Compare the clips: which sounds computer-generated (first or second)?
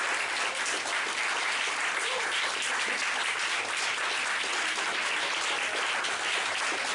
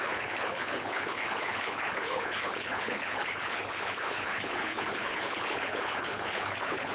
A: second